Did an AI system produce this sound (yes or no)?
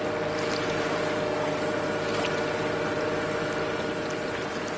no